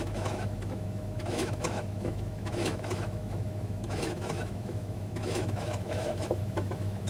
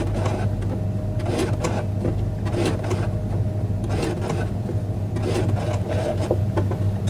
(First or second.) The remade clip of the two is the first